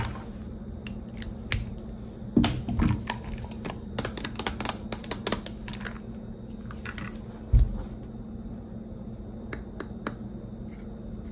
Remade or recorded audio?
recorded